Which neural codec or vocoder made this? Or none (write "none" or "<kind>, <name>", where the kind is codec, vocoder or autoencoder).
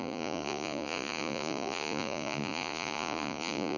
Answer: vocoder, Vocos